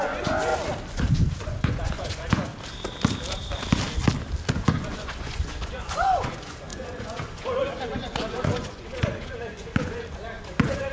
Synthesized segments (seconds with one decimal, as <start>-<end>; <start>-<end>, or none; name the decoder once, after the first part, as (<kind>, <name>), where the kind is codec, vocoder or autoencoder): 0.0-0.5 (vocoder, Vocos); 1.1-2.5; 4.6-10.9